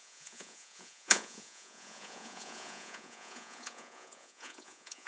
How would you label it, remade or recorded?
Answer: remade